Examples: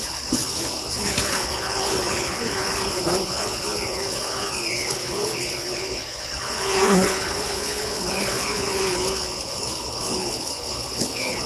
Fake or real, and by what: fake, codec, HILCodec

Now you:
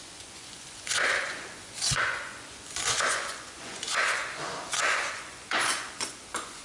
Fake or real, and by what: fake, vocoder, Vocos